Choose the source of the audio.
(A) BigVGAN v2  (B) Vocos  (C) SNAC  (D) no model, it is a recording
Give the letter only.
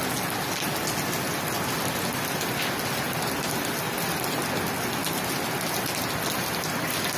D